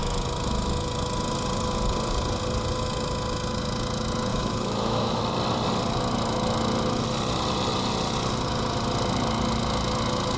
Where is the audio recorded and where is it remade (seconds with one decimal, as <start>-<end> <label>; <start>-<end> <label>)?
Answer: 0.0-4.3 recorded; 4.3-5.2 remade; 5.2-10.4 recorded